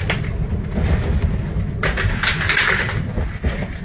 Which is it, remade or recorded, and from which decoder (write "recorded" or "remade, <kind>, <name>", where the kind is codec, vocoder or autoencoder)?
recorded